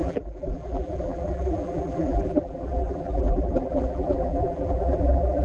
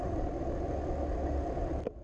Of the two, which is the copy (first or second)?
first